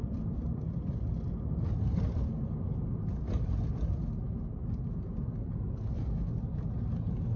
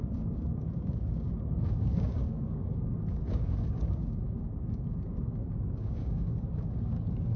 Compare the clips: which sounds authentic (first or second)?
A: first